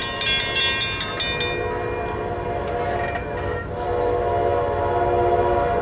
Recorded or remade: recorded